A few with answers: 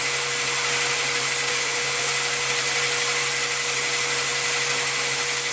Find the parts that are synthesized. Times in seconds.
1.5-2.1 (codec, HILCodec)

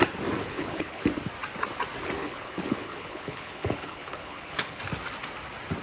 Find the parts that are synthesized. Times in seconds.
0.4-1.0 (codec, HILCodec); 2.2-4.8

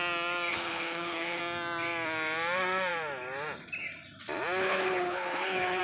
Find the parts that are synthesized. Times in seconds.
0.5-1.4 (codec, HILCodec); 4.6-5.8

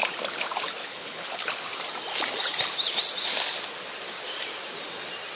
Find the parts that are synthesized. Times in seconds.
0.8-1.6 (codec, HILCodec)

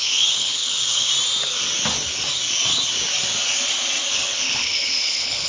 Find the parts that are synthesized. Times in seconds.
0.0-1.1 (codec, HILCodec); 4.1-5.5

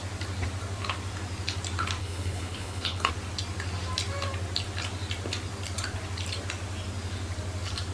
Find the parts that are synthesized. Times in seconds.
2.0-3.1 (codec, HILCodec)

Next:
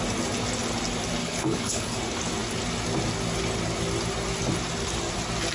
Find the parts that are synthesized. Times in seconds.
1.2-2.0 (codec, HILCodec)